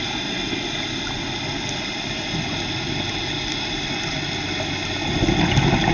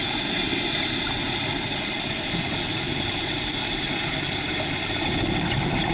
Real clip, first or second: first